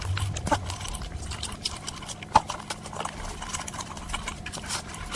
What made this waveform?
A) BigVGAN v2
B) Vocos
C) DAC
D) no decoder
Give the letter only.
D